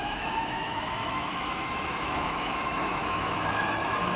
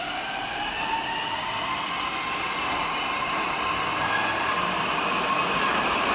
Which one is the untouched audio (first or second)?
second